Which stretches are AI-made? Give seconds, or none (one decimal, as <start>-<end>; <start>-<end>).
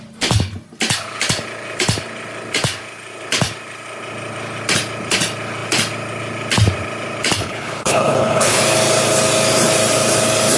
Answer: 7.4-8.6